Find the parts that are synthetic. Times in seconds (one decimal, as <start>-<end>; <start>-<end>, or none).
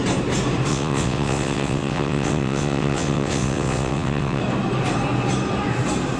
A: 0.7-4.4